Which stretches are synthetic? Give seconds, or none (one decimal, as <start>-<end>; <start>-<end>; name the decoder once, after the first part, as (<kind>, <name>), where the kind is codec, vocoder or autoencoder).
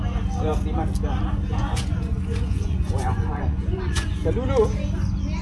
1.6-4.1 (vocoder, Vocos)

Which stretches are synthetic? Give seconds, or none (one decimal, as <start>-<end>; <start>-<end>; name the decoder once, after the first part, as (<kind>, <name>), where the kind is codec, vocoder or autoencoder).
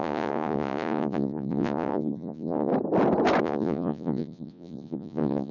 0.0-2.7 (vocoder, Vocos); 3.4-5.5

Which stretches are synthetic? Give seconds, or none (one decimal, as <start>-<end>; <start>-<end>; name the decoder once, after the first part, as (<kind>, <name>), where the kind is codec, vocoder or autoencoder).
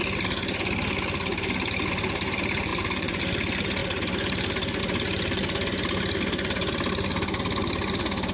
2.7-3.2 (vocoder, BigVGAN v2)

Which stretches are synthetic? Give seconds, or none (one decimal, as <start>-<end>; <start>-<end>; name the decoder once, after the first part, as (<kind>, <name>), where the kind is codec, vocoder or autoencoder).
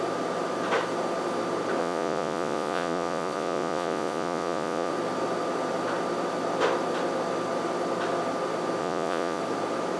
1.8-4.9 (vocoder, Vocos); 8.8-9.4